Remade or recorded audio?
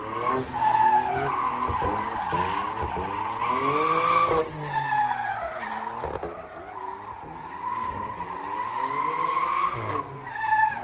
recorded